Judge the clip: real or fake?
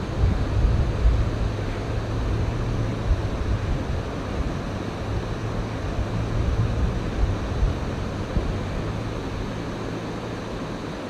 real